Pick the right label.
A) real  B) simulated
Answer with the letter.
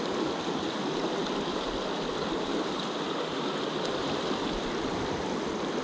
A